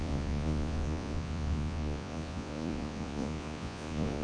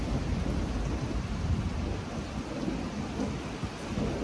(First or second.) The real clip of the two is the second